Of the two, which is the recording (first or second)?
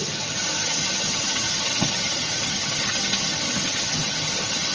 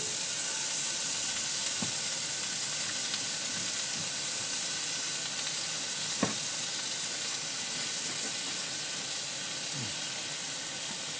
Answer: second